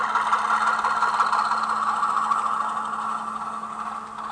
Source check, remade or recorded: recorded